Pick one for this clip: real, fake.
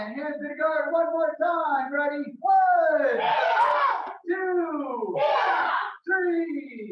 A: real